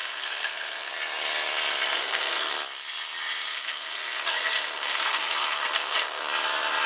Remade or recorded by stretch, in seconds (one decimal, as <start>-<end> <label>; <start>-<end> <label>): 0.0-0.9 remade; 0.9-1.9 recorded; 1.9-2.5 remade; 2.5-3.5 recorded; 3.5-6.2 remade; 6.2-6.9 recorded